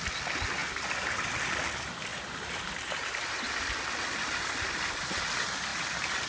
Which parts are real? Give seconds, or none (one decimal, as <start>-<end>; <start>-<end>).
0.0-2.1; 3.5-6.3